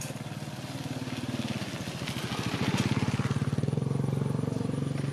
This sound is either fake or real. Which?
real